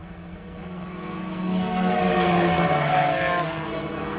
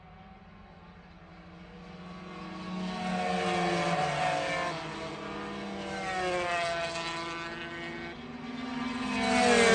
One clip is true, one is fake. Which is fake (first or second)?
first